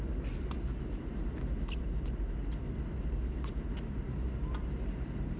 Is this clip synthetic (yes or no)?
no